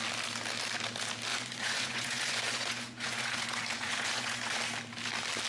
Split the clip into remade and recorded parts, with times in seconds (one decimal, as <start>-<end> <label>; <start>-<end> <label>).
0.0-1.3 recorded; 1.3-4.6 remade; 4.6-5.5 recorded